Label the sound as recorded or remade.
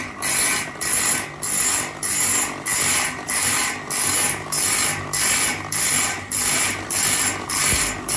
recorded